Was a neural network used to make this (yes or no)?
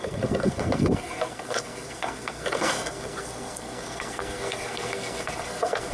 yes